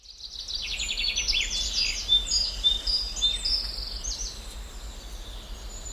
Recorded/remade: recorded